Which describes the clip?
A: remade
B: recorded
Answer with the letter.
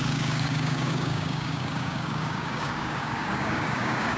A